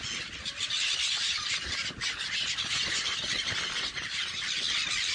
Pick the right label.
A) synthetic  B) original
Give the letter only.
B